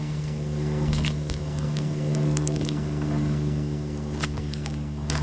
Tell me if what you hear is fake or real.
fake